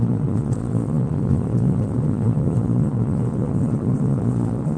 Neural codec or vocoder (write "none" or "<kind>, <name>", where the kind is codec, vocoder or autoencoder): vocoder, Vocos